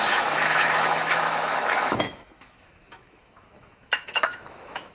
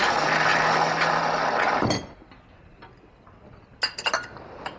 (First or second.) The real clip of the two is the second